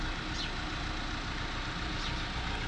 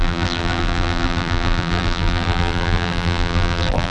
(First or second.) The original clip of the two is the first